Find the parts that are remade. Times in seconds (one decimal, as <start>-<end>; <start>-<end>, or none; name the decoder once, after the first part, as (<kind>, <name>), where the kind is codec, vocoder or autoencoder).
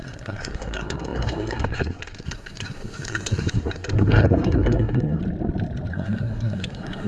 0.0-5.2 (codec, SNAC); 5.9-7.1